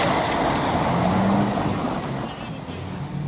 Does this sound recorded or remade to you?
recorded